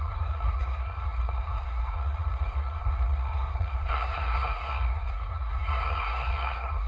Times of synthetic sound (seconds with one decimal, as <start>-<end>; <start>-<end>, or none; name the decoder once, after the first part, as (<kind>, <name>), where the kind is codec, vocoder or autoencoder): 0.0-6.9 (codec, SNAC)